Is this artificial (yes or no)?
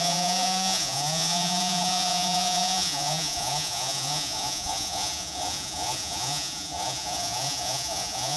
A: yes